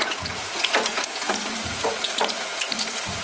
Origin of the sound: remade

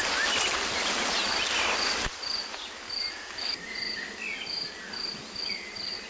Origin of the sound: recorded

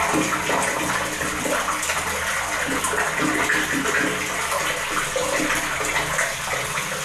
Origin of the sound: recorded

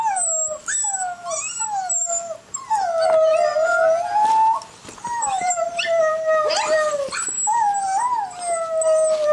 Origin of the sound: recorded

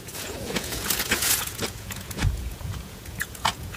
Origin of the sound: remade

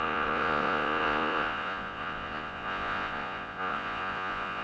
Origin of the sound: remade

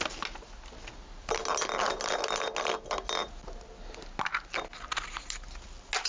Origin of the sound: recorded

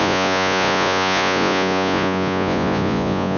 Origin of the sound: remade